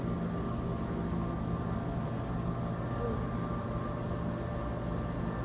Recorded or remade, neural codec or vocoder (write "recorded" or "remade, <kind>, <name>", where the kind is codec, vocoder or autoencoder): recorded